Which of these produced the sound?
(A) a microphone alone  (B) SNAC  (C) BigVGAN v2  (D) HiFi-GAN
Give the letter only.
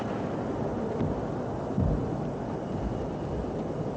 A